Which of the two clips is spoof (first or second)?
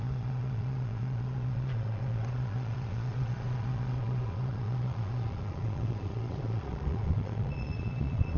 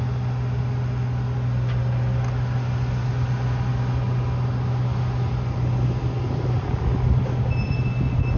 first